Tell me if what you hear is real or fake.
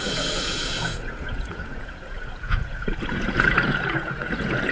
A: fake